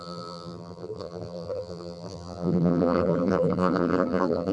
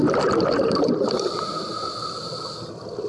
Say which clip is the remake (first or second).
first